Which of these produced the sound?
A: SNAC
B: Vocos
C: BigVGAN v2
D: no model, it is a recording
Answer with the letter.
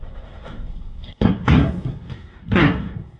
A